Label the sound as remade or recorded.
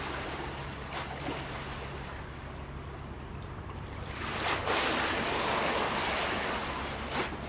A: recorded